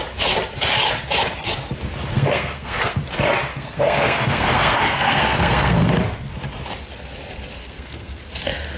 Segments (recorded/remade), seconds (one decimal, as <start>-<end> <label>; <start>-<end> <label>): 0.0-2.1 recorded; 2.1-3.0 remade; 3.0-3.5 recorded; 3.5-5.9 remade; 5.9-7.6 recorded; 7.6-8.2 remade; 8.2-8.8 recorded